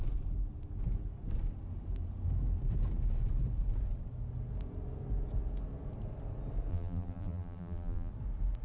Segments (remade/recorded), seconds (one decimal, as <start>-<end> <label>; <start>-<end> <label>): 0.0-6.7 recorded; 6.7-8.1 remade; 8.1-8.6 recorded